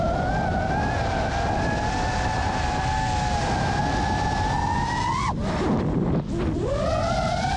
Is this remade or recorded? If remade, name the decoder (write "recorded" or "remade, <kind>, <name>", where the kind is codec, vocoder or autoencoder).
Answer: recorded